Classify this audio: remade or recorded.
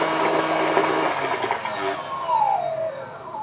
recorded